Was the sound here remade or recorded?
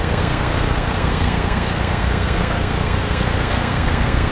remade